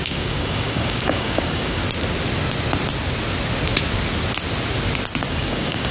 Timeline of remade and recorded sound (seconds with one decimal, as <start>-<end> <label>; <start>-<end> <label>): 0.0-1.8 remade; 1.8-5.3 recorded; 5.3-5.9 remade

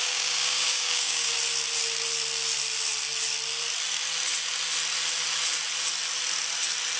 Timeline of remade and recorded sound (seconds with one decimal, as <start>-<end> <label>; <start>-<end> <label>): 0.0-1.3 remade; 1.3-7.0 recorded